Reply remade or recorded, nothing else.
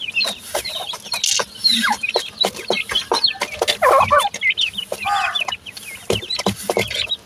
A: recorded